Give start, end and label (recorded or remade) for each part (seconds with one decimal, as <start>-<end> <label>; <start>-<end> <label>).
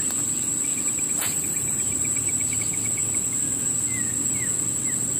0.0-0.7 recorded; 0.7-2.6 remade; 2.6-5.2 recorded